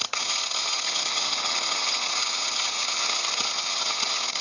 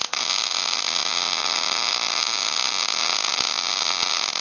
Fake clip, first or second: first